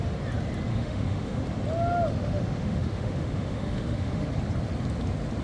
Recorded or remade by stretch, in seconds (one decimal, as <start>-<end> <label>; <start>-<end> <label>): 0.0-0.7 recorded; 0.7-1.4 remade; 1.4-2.1 recorded; 2.1-4.3 remade; 4.3-5.4 recorded